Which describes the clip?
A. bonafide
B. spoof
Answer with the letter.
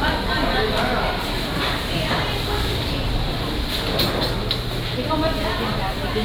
A